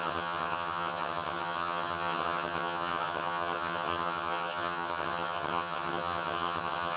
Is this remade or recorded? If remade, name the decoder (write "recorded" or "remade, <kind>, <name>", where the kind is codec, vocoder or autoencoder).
remade, vocoder, HiFi-GAN